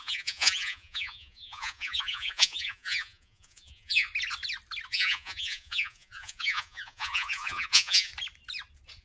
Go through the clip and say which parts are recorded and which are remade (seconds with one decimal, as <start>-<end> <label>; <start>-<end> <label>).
0.0-4.1 remade; 4.1-4.9 recorded; 4.9-8.1 remade; 8.1-9.0 recorded